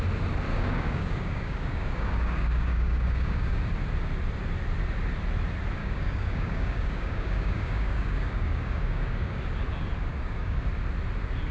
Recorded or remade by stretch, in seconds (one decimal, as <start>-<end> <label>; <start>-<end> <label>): 0.0-0.5 recorded; 0.5-3.6 remade; 3.6-5.8 recorded; 5.8-9.4 remade; 9.4-10.1 recorded; 10.1-10.7 remade; 10.7-11.5 recorded